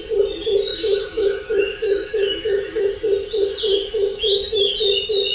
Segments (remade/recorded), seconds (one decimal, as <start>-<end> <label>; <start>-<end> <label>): 0.0-0.7 recorded; 0.7-2.9 remade; 2.9-3.7 recorded; 3.7-4.7 remade; 4.7-5.3 recorded